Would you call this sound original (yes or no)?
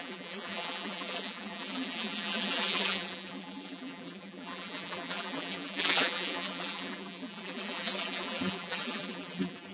no